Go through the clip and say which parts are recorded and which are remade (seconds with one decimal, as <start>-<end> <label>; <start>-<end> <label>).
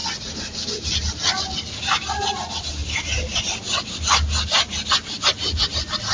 0.0-2.8 recorded; 2.8-3.4 remade; 3.4-6.1 recorded